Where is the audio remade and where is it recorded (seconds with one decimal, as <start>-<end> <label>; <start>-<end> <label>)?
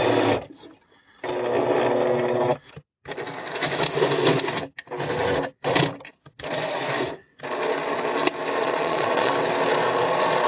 0.0-8.6 recorded; 8.6-9.3 remade; 9.3-10.5 recorded